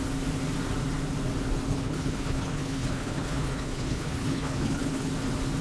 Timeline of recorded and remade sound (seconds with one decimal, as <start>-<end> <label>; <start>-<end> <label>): 0.0-1.7 recorded; 1.7-5.1 remade; 5.1-5.6 recorded